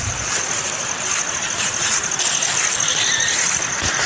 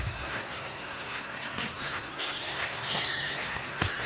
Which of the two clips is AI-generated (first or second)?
second